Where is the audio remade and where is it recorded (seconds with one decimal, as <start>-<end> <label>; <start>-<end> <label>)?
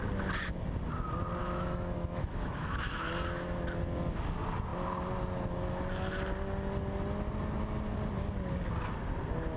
0.0-1.4 recorded; 1.4-3.1 remade; 3.1-9.6 recorded